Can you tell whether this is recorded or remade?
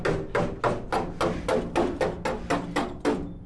recorded